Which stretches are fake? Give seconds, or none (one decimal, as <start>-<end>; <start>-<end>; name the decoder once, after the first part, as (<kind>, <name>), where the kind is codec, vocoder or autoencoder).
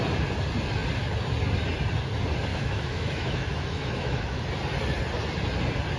2.5-4.4 (autoencoder, DAC-VAE)